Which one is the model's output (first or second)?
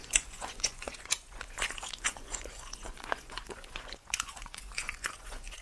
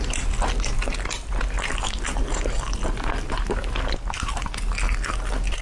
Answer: first